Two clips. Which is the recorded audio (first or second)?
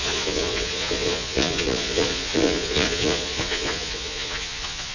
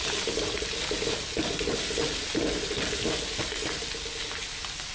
second